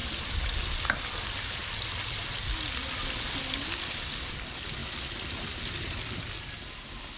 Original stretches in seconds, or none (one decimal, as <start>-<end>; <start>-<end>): 0.0-7.2